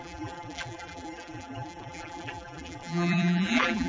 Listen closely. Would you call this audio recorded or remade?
remade